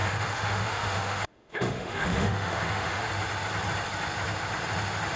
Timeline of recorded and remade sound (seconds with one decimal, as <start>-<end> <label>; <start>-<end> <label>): 0.0-3.1 remade; 3.1-5.2 recorded